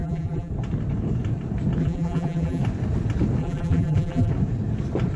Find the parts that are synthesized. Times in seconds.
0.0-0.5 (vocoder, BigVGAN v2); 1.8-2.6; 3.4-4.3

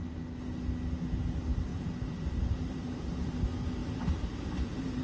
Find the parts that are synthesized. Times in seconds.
1.7-3.3 (vocoder, BigVGAN v2); 3.8-5.0

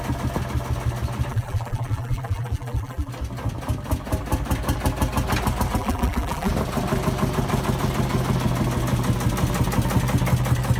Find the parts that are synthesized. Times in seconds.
1.3-3.1 (vocoder, BigVGAN v2); 5.8-6.5

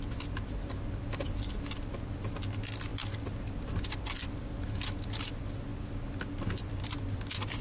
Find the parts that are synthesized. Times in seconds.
none

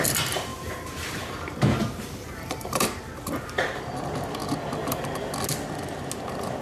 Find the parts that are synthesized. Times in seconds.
0.5-3.8 (vocoder, BigVGAN v2)